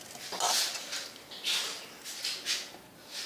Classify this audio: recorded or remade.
recorded